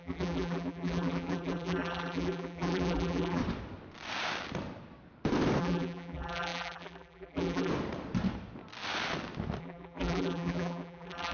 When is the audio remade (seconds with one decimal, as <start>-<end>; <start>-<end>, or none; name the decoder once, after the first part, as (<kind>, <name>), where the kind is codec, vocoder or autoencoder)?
0.0-3.4 (vocoder, BigVGAN v2); 5.6-7.7; 9.6-11.3